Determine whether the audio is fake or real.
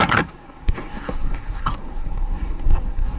fake